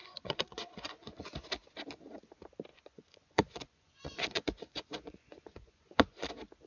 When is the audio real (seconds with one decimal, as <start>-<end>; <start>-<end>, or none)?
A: 1.3-2.7; 6.3-6.7